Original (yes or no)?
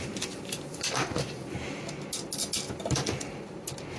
yes